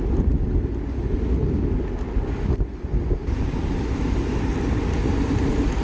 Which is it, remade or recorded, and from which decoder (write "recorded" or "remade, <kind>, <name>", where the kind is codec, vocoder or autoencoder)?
recorded